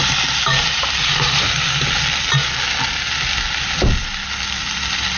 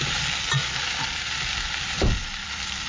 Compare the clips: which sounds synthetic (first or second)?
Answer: second